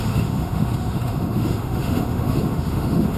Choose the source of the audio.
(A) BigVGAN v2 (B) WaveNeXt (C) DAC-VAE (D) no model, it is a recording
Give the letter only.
C